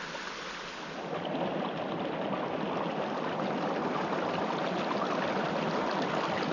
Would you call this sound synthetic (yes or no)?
no